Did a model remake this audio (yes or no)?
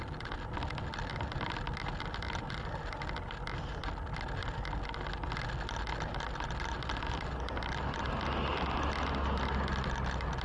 no